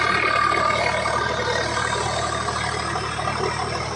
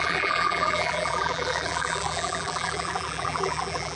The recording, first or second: first